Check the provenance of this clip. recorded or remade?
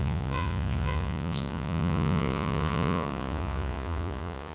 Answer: remade